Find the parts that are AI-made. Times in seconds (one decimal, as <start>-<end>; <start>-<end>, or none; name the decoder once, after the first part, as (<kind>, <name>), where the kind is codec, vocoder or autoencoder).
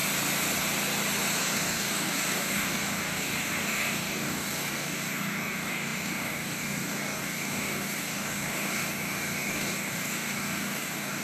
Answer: 1.4-11.2 (codec, DAC)